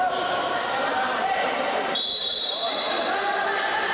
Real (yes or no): no